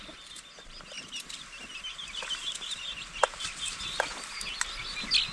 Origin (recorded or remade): recorded